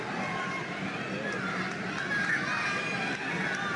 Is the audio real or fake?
real